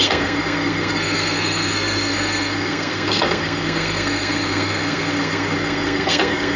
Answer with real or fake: fake